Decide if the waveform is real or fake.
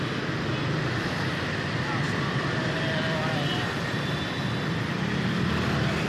real